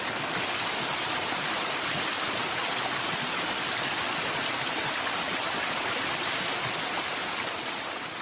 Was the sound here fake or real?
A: real